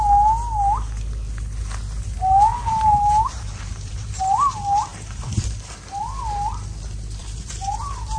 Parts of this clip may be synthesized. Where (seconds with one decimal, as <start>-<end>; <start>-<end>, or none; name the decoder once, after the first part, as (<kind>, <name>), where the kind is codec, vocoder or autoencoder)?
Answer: 2.5-4.2 (vocoder, BigVGAN v2); 4.9-5.5; 7.2-8.2